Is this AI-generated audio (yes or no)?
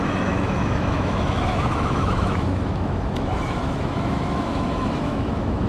yes